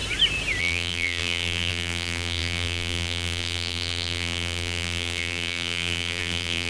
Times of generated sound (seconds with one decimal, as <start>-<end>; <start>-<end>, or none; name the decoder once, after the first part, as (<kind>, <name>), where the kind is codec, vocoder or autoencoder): 0.6-6.7 (vocoder, BigVGAN v2)